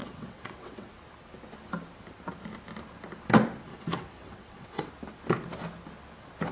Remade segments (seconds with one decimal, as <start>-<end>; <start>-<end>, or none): 0.0-0.9; 3.7-4.9